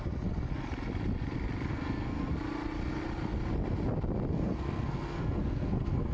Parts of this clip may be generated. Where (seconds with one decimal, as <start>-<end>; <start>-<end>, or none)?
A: 1.7-2.3; 4.3-6.1